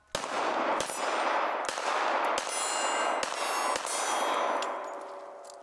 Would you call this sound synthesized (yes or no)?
no